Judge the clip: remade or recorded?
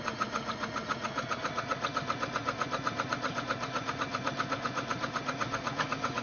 remade